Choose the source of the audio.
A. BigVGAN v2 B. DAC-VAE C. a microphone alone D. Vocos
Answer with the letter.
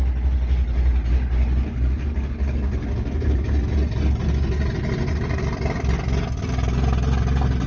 C